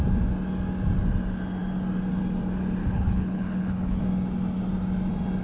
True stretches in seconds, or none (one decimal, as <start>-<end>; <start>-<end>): 0.0-2.8; 4.0-5.4